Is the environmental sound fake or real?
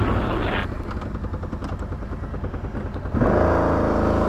real